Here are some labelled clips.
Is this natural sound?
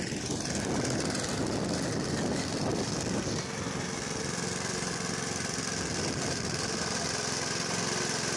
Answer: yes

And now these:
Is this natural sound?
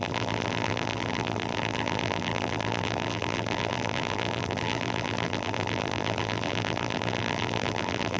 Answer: no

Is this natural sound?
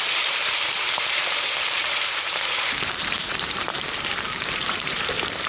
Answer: no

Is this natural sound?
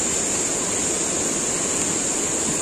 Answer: yes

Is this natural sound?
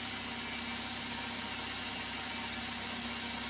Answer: yes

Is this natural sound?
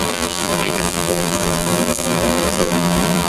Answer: no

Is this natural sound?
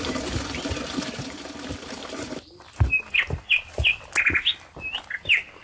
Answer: no